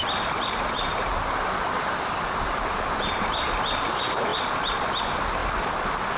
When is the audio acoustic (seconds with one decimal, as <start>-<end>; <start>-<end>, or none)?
0.0-6.2